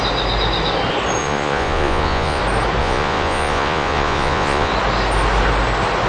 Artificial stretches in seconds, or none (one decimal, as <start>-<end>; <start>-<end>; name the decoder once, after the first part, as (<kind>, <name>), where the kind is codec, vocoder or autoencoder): 1.2-2.4 (vocoder, Vocos); 2.8-4.7